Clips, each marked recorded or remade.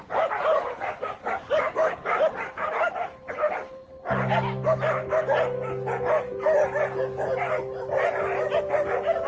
remade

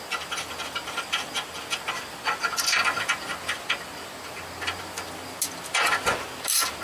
recorded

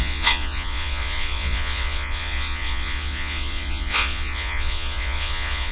remade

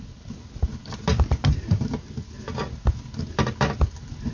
recorded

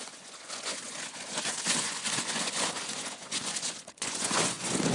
remade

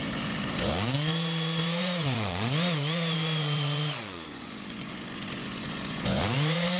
remade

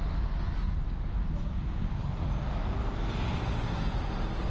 recorded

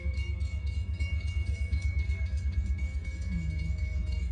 remade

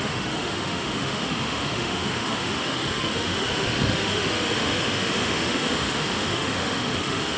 remade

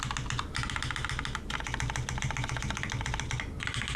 recorded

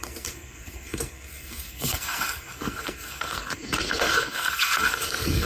remade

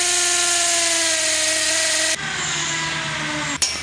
recorded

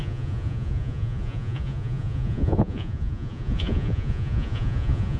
remade